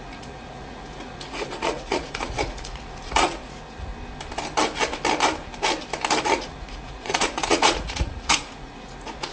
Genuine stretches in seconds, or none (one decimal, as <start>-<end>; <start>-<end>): 3.9-6.2